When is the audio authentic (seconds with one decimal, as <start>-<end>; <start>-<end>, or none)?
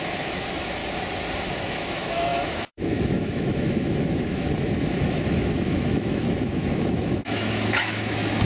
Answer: 0.8-1.6